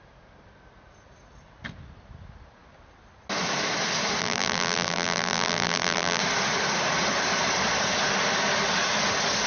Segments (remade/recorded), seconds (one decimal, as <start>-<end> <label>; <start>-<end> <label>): 0.0-4.2 recorded; 4.2-6.2 remade; 6.2-9.5 recorded